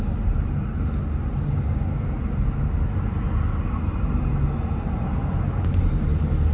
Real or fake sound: real